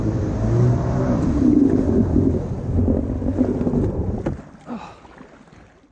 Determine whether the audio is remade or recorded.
recorded